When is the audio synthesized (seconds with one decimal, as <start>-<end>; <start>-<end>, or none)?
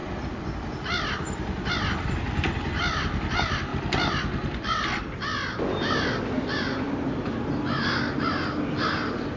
none